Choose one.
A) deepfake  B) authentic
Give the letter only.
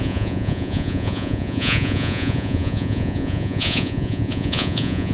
A